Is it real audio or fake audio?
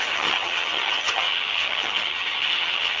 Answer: fake